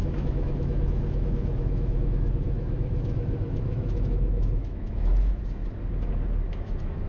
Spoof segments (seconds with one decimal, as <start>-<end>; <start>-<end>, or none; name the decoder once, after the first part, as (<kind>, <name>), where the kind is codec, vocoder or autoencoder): 0.0-5.6 (autoencoder, DAC-VAE); 6.5-7.1